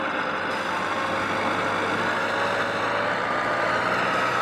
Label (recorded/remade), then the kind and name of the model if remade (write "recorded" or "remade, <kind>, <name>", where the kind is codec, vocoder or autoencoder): recorded